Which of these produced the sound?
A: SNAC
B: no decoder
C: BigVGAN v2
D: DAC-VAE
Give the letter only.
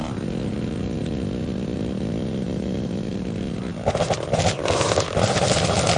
B